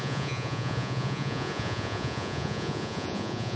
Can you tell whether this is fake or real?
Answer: fake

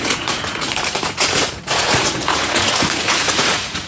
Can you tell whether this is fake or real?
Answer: fake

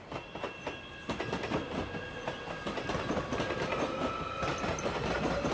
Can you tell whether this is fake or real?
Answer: real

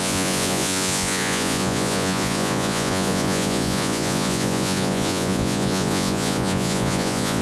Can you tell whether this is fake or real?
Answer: fake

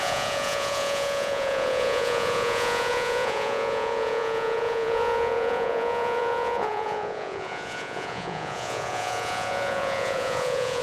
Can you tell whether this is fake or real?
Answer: fake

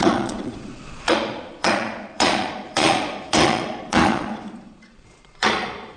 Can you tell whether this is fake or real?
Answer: fake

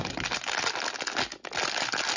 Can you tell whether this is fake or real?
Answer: real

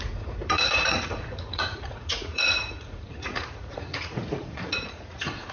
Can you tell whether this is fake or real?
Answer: fake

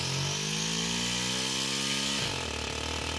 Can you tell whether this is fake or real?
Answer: real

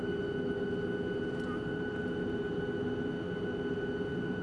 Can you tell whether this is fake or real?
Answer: real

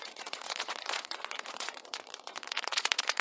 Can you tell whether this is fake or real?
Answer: fake